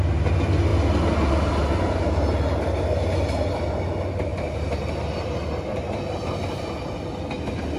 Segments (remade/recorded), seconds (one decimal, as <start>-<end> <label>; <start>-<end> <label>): 0.0-7.8 recorded